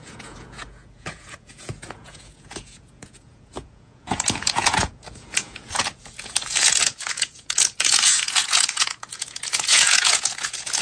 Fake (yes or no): yes